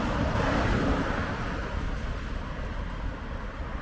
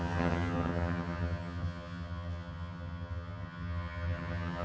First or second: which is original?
first